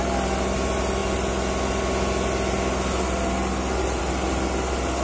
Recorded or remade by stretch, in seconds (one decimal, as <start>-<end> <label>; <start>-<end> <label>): 0.0-5.0 recorded